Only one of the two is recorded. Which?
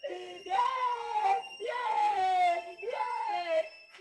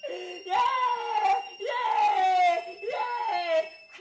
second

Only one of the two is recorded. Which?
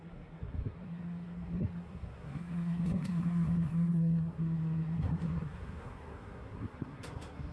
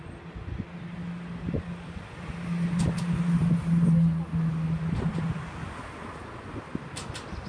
second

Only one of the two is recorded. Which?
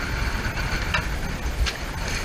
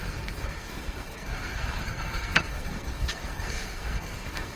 first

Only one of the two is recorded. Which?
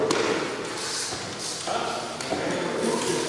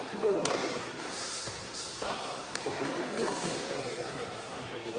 first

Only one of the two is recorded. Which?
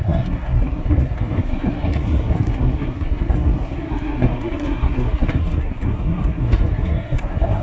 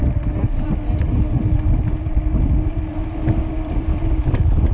second